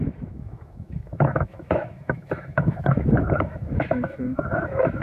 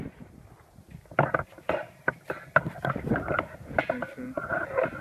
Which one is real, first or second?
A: second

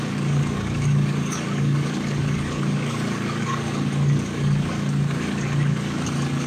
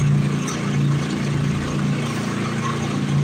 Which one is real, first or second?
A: second